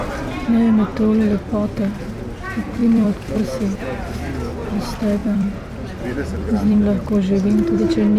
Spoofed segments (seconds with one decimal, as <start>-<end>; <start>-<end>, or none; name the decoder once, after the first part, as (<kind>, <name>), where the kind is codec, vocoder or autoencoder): 2.8-3.4 (vocoder, BigVGAN v2); 5.2-6.8